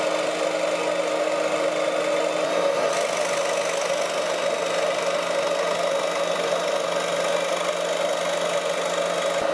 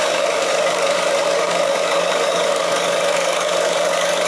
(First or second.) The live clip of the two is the first